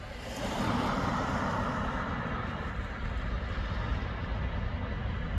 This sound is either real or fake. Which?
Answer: real